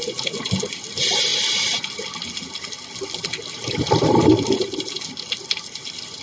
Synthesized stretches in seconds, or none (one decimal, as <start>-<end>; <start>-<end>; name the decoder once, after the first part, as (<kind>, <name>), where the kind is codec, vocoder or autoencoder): none